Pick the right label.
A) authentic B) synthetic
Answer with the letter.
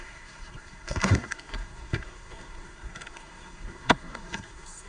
B